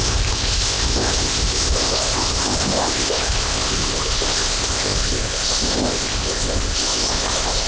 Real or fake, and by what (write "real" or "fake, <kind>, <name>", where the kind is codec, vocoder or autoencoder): fake, codec, ZipCodec